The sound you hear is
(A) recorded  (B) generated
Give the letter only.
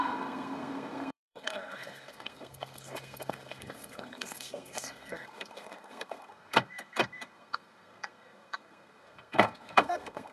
B